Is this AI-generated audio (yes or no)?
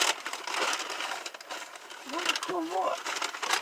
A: no